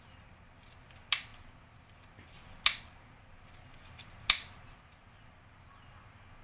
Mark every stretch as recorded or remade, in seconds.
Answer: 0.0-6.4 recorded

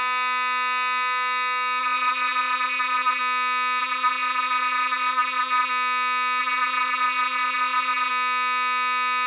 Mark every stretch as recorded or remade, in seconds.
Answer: 0.0-1.8 recorded; 1.8-3.2 remade; 3.2-3.8 recorded; 3.8-5.7 remade; 5.7-6.4 recorded; 6.4-8.1 remade; 8.1-9.3 recorded